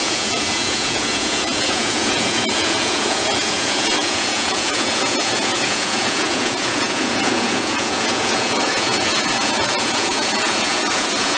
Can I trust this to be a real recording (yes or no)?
no